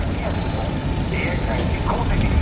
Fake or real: real